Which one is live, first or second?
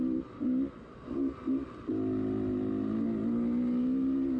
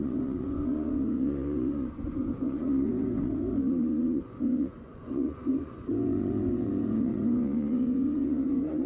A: first